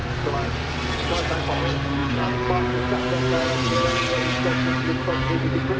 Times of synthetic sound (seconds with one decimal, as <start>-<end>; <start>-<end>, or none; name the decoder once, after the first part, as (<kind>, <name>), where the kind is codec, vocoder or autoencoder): none

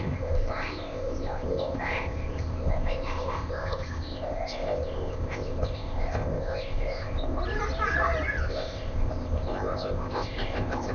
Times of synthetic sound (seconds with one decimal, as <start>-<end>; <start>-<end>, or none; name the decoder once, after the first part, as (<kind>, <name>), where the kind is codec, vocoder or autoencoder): 0.0-7.4 (codec, ZipCodec); 8.4-10.9